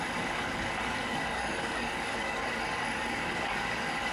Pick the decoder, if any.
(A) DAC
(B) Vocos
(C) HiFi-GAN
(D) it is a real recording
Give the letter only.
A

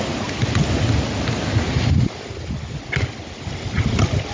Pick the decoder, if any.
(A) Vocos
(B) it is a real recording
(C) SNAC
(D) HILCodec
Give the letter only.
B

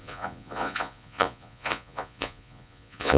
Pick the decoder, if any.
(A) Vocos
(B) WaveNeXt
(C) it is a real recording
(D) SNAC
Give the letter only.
A